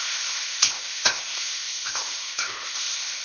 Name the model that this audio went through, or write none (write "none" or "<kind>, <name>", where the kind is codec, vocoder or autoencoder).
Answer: codec, ZipCodec